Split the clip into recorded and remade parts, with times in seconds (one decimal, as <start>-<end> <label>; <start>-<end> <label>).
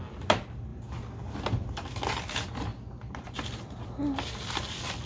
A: 0.0-5.1 recorded